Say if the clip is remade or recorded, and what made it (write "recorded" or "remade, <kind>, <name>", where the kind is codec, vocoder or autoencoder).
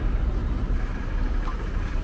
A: recorded